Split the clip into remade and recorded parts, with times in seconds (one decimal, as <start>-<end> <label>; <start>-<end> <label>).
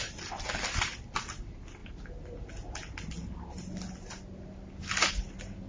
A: 0.0-5.7 recorded